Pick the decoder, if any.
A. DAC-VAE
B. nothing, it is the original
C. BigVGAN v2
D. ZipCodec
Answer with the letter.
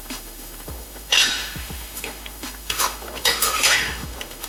A